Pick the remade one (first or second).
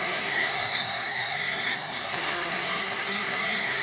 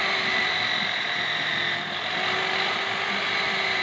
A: first